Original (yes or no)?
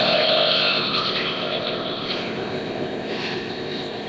no